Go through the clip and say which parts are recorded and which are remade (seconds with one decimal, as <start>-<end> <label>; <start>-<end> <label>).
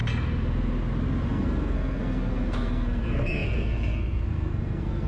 0.0-1.3 recorded; 1.3-5.1 remade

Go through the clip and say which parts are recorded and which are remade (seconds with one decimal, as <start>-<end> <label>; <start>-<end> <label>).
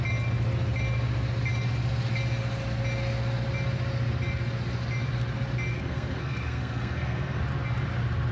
0.0-5.7 recorded; 5.7-7.4 remade; 7.4-8.3 recorded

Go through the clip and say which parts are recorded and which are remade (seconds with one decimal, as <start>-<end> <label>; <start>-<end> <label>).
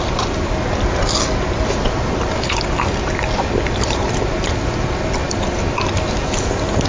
0.0-6.9 recorded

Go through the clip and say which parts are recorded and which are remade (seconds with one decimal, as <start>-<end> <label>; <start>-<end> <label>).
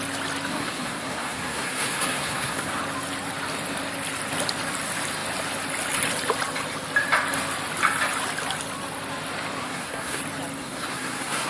0.0-0.5 recorded; 0.5-2.8 remade; 2.8-9.6 recorded; 9.6-10.2 remade; 10.2-10.6 recorded; 10.6-11.5 remade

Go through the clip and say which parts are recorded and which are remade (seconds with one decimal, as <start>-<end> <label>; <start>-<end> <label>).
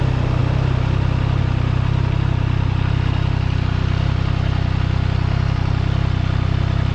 0.0-6.9 recorded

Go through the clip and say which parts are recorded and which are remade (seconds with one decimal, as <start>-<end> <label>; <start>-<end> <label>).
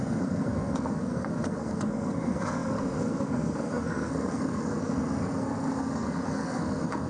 0.0-7.1 remade